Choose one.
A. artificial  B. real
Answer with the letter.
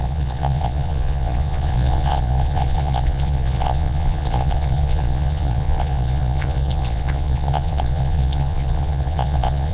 A